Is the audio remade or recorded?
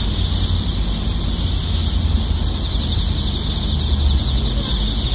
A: recorded